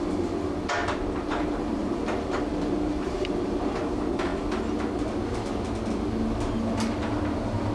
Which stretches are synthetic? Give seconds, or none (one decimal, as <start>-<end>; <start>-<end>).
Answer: 0.8-1.4; 1.8-3.8